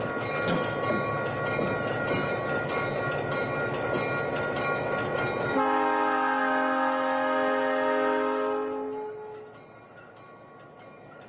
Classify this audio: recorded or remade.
recorded